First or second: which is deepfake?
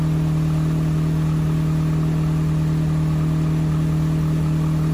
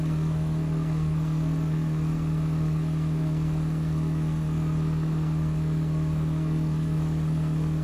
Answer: second